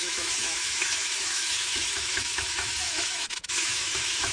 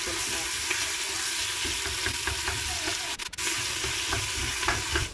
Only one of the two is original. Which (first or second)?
second